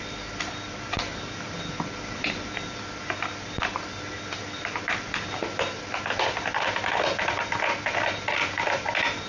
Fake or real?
real